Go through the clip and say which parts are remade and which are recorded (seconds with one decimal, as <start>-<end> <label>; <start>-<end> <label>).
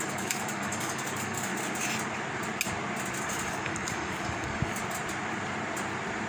0.0-1.5 remade; 1.5-3.2 recorded; 3.2-4.8 remade; 4.8-6.3 recorded